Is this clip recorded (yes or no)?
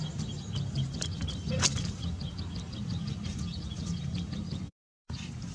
no